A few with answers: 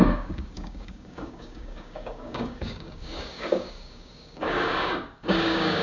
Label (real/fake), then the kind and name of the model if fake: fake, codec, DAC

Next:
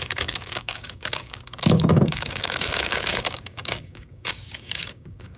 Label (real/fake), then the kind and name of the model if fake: fake, codec, DAC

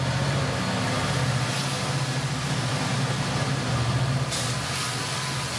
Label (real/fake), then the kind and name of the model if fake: real